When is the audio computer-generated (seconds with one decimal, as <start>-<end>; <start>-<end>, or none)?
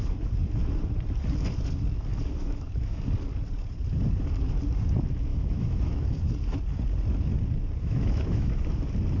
2.4-3.0; 5.3-6.0; 7.8-8.5